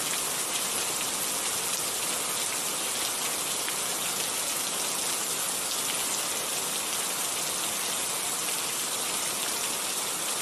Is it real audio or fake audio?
real